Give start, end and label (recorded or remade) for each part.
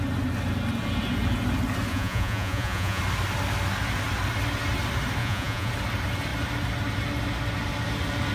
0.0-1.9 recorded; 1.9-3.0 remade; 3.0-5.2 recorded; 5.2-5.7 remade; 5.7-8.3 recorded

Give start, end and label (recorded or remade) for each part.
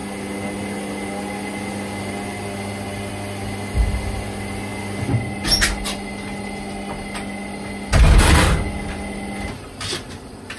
0.0-10.6 recorded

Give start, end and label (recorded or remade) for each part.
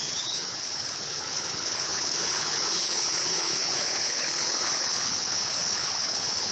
0.0-6.5 remade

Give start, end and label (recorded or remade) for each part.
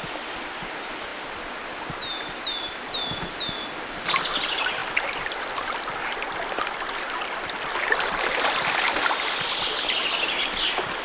0.0-11.0 recorded